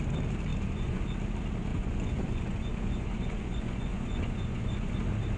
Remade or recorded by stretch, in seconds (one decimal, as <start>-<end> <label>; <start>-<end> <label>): 0.0-0.5 recorded; 0.5-1.0 remade; 1.0-1.7 recorded; 1.7-4.9 remade; 4.9-5.4 recorded